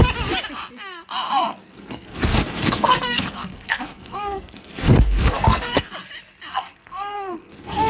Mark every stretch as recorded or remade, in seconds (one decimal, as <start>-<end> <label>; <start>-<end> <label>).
0.0-1.5 recorded; 1.5-5.9 remade; 5.9-6.5 recorded; 6.5-7.9 remade